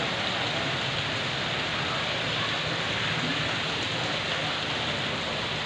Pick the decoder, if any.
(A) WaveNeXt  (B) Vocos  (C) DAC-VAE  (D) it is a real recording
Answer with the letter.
D